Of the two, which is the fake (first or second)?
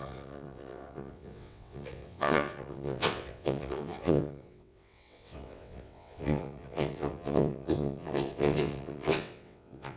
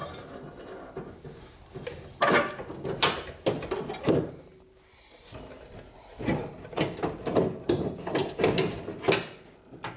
first